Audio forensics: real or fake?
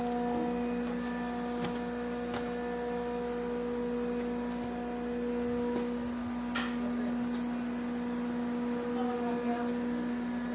real